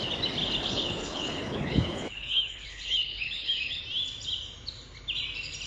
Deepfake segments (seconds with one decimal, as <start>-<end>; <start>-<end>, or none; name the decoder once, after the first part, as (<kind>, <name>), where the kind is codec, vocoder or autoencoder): 0.4-3.8 (codec, HILCodec)

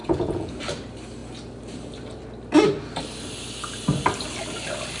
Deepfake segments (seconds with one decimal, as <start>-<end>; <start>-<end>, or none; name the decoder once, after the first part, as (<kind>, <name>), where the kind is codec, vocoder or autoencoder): 0.0-0.5 (vocoder, Vocos)

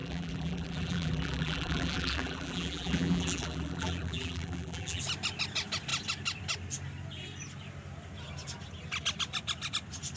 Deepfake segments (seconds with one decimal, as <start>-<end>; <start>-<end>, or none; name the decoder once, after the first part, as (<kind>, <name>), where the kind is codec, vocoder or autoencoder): 0.0-5.0 (vocoder, BigVGAN v2)

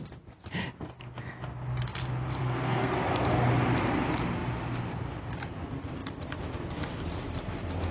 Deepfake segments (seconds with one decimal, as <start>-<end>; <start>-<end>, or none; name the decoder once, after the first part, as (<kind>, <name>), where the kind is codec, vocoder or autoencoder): 2.4-3.0 (codec, SNAC)